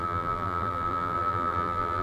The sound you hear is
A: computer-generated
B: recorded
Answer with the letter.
A